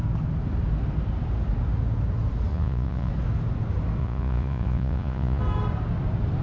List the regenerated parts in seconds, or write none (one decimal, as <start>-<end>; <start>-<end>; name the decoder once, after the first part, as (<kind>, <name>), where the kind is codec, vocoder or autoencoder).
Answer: 2.5-3.1 (vocoder, Vocos); 4.0-5.4